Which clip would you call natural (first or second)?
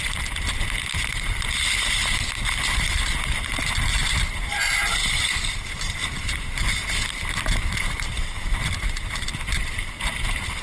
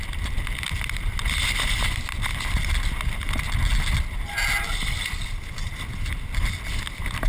second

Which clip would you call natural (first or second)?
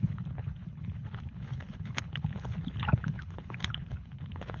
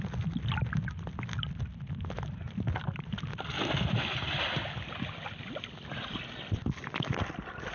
second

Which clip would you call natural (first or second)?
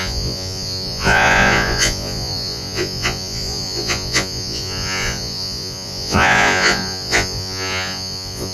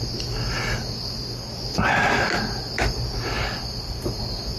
second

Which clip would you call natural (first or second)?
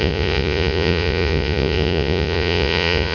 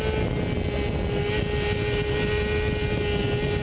second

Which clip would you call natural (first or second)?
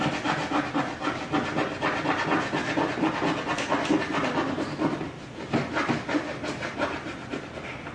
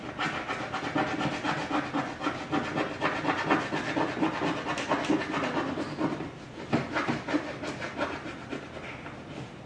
second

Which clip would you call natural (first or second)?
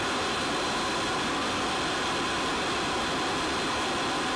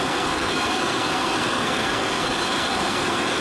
first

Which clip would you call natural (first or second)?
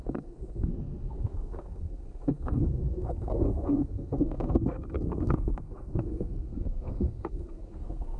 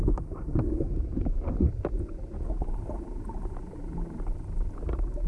second